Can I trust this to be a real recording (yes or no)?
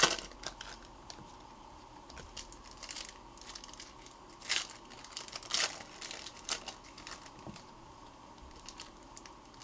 yes